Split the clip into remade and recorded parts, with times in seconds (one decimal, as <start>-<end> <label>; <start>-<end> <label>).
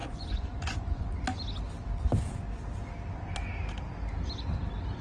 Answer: 0.0-1.1 remade; 1.1-5.0 recorded